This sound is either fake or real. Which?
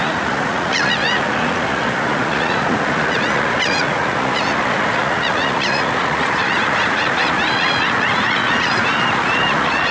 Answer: fake